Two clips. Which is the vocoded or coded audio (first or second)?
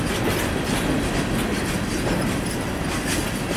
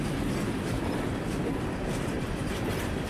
second